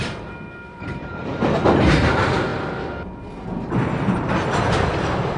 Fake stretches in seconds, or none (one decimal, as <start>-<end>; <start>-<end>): 0.0-1.2; 1.9-2.5